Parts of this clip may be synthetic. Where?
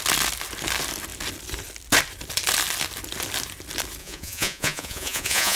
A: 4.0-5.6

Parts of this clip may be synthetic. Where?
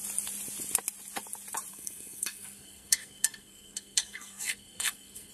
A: 1.7-5.3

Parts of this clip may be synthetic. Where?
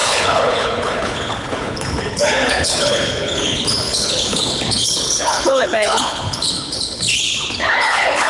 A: 0.0-8.3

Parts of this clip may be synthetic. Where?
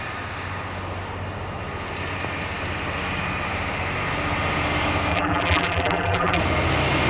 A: 5.1-6.4